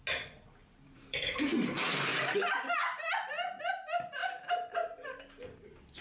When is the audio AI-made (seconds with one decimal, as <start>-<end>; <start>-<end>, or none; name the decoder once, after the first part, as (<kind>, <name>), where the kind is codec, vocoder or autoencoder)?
0.6-1.7 (vocoder, BigVGAN v2); 2.1-3.6; 4.2-5.2